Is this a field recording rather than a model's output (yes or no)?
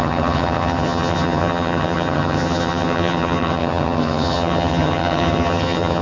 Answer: no